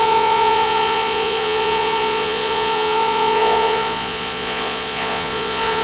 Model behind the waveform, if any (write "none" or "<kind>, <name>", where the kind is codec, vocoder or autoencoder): vocoder, Vocos